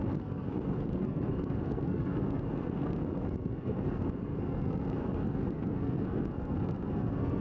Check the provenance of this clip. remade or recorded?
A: remade